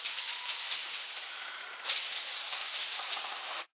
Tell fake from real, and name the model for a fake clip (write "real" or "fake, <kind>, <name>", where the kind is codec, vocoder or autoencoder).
real